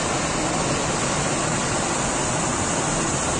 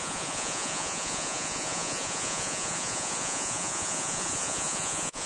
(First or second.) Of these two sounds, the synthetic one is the second